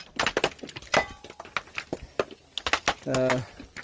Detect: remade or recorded recorded